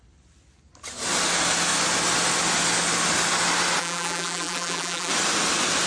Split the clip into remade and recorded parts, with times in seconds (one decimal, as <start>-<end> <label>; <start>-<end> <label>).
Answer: 0.0-3.8 recorded; 3.8-5.1 remade; 5.1-5.9 recorded